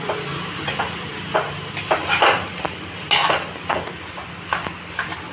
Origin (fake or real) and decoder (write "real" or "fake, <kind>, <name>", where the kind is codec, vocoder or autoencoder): real